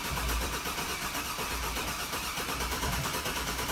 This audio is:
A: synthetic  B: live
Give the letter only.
A